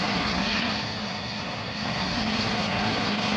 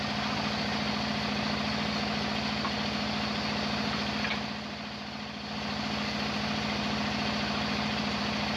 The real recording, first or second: second